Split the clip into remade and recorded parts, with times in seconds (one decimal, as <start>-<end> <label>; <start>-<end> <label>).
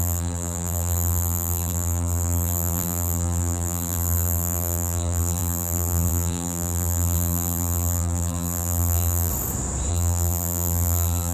0.0-9.3 remade; 9.3-9.9 recorded; 9.9-11.3 remade